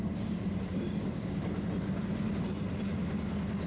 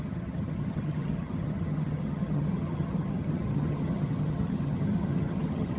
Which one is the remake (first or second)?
second